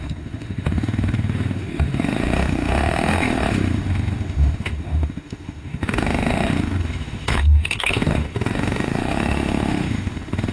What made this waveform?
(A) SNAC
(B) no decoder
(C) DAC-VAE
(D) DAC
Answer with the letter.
C